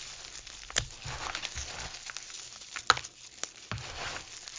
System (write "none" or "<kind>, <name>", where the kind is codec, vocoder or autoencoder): none